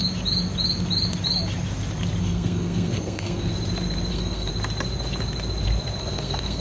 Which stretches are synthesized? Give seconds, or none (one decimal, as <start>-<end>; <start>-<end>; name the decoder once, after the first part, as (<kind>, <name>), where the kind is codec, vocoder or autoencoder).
2.2-3.5 (codec, SNAC); 4.1-4.5; 6.0-6.6